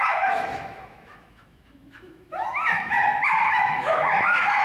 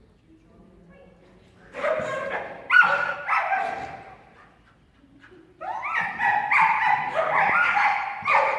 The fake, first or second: first